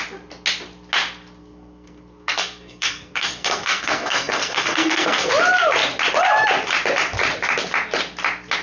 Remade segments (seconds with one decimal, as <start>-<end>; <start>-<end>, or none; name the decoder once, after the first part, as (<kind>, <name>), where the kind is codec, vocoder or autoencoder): 1.4-5.3 (codec, SNAC)